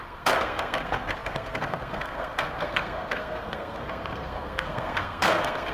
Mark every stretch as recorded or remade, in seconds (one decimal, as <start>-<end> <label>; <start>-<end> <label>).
0.0-5.7 remade